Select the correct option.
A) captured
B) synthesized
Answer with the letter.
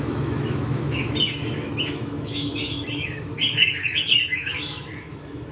B